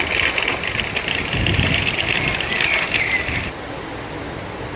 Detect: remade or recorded recorded